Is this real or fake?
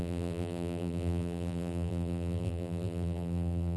fake